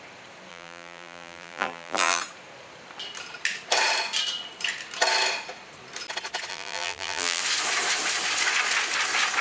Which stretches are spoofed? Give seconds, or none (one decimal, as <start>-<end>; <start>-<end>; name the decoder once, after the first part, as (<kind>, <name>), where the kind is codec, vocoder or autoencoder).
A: 0.5-2.2 (vocoder, BigVGAN v2); 6.5-7.4